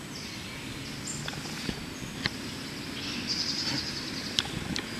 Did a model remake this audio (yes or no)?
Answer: no